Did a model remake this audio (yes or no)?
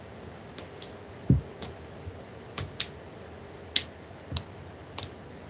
no